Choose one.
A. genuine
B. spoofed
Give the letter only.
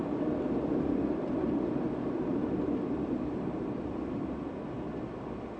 B